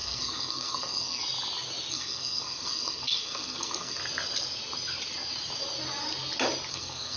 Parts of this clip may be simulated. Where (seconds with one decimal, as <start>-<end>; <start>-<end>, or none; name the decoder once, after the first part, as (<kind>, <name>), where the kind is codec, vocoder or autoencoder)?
0.0-1.2 (codec, SNAC); 1.9-4.0; 6.7-7.2